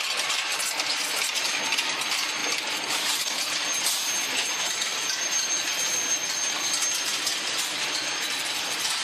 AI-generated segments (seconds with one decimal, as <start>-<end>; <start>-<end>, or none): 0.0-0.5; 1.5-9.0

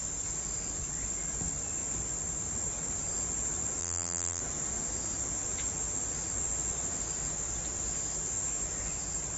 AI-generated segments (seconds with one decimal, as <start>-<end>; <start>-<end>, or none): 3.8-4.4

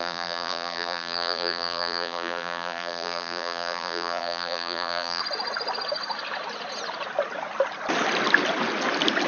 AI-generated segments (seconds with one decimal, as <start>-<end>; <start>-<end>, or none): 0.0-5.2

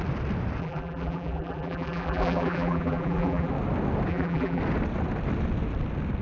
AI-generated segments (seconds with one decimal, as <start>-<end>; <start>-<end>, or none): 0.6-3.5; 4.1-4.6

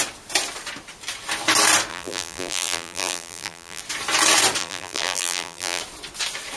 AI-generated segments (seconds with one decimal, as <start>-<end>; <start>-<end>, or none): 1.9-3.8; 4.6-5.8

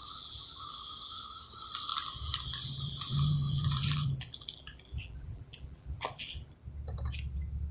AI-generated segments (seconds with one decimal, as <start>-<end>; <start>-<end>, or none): 0.0-0.9; 1.9-6.5

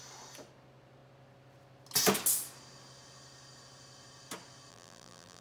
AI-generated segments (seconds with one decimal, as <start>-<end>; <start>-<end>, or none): 4.7-5.4